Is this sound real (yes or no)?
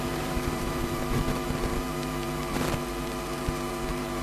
no